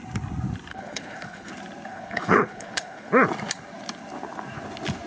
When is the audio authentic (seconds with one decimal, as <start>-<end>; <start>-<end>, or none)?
0.0-0.7; 1.5-1.9; 3.1-5.1